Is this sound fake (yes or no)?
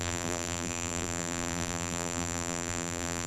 yes